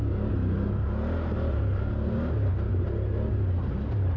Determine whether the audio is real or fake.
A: real